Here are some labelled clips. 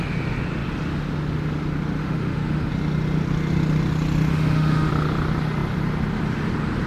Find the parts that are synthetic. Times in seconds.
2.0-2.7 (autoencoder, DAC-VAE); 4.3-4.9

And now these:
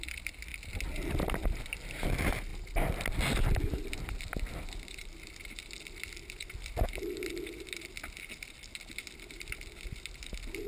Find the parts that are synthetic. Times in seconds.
none

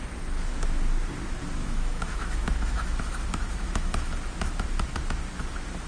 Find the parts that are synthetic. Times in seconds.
1.6-4.1 (autoencoder, DAC-VAE)

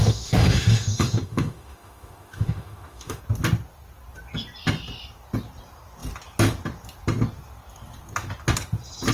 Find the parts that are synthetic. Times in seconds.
0.0-3.2 (autoencoder, DAC-VAE)

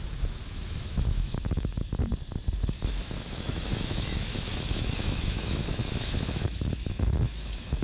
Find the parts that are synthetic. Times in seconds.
0.0-2.1 (autoencoder, DAC-VAE); 2.9-7.8

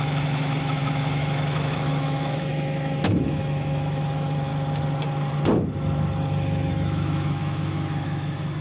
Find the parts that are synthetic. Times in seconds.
0.0-4.5 (autoencoder, DAC-VAE); 6.7-8.6

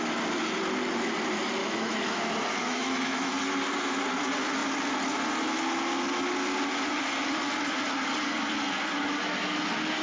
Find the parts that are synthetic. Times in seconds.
1.6-2.2 (autoencoder, DAC-VAE); 2.6-3.3